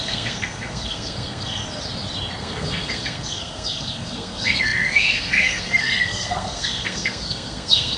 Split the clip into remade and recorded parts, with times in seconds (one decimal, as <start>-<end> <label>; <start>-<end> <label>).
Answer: 0.0-1.6 remade; 1.6-2.4 recorded; 2.4-8.0 remade